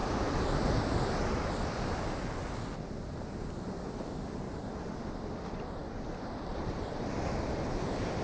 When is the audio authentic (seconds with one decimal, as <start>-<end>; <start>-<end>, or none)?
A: 0.0-8.2